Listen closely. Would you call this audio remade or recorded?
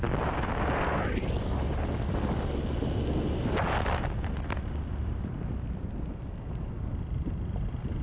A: recorded